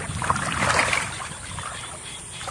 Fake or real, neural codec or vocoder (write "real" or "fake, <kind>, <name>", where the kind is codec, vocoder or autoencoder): fake, vocoder, BigVGAN v2